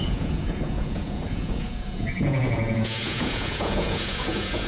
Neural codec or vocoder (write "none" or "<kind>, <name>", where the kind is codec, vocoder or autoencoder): vocoder, Vocos